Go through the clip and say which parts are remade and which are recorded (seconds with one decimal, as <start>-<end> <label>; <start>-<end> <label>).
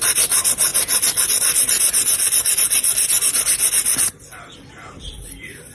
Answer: 0.0-0.7 remade; 0.7-4.1 recorded; 4.1-5.7 remade